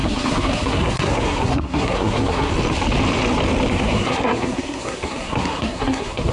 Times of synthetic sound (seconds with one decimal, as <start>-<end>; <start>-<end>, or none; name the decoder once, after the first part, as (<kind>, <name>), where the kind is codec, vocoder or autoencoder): 0.0-2.5 (codec, SNAC); 3.7-6.3